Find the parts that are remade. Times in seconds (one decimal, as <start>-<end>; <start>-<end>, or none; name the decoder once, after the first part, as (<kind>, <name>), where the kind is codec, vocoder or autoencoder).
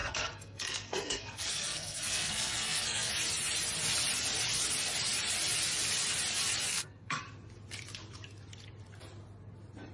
0.0-3.1 (codec, SNAC); 6.7-7.2